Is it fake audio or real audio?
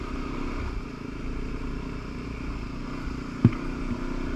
real